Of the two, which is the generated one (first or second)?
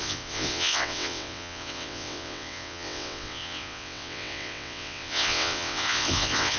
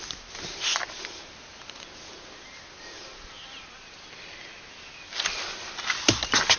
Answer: first